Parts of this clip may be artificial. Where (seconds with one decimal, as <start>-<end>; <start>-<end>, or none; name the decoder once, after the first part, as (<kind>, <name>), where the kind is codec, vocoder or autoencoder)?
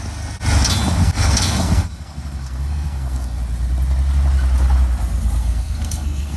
1.0-3.4 (codec, SNAC); 5.4-6.4